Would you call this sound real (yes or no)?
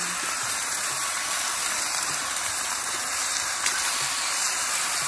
no